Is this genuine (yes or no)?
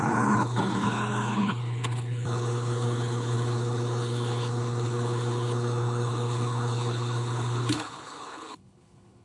no